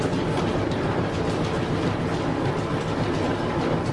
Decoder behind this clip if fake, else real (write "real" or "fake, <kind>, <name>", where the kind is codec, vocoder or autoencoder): real